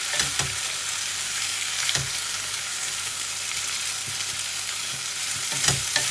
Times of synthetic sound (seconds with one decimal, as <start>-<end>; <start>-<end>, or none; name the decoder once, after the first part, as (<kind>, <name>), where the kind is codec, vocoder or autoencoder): 1.1-3.3 (codec, DAC); 4.5-5.1